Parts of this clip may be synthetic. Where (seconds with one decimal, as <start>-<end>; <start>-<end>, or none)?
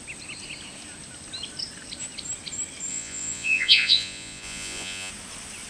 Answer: 2.9-5.1